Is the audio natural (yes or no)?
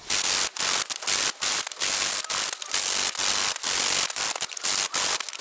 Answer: yes